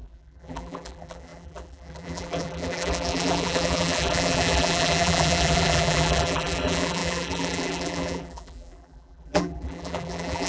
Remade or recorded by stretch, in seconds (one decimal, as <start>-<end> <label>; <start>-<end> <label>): 0.0-10.5 remade